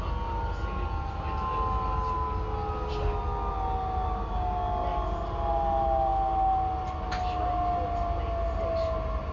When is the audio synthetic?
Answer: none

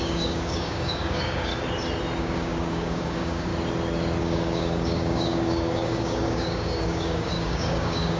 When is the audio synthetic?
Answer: 0.0-1.5 (codec, DAC); 2.2-3.5; 4.2-8.2